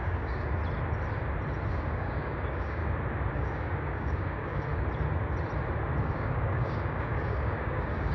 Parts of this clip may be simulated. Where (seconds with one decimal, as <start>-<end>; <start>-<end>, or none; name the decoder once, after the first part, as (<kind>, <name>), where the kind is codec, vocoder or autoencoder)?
0.0-0.6 (codec, DAC); 1.7-2.8; 3.3-4.7; 6.0-8.1